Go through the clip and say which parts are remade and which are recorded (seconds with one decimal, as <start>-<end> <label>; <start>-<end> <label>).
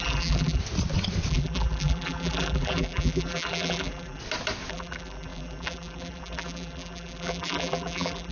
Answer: 0.0-0.6 remade; 0.6-1.3 recorded; 1.3-4.2 remade; 4.2-4.7 recorded; 4.7-8.3 remade